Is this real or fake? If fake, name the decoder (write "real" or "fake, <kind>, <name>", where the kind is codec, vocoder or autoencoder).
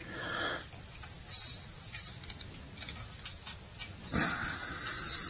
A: real